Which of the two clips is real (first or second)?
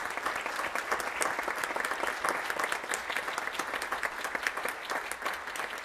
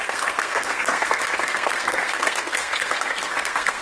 first